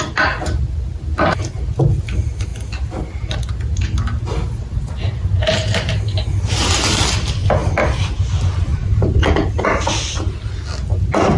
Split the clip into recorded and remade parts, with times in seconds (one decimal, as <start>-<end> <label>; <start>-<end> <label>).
0.0-8.7 recorded; 8.7-9.5 remade; 9.5-11.4 recorded